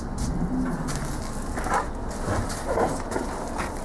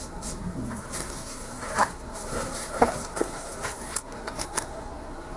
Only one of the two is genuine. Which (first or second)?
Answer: first